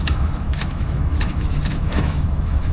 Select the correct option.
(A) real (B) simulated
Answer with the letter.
B